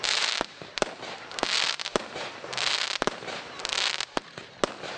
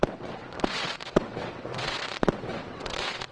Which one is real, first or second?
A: first